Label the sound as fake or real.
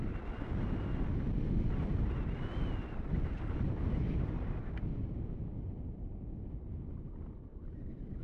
real